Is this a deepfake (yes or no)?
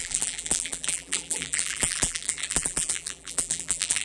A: yes